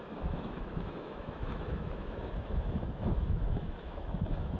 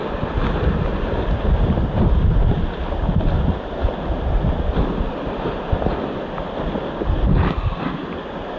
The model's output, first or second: first